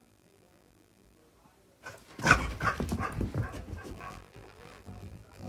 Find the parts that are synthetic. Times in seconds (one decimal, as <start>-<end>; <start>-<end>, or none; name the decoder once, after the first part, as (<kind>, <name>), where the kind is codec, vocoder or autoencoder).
0.0-1.2 (vocoder, BigVGAN v2); 3.9-5.5